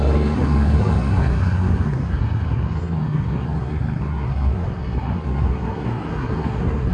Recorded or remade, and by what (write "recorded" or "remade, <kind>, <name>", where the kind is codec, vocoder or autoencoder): remade, codec, SNAC